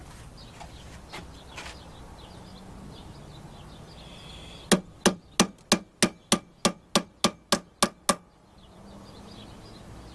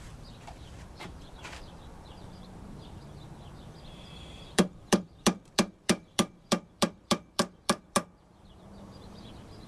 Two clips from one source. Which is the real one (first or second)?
first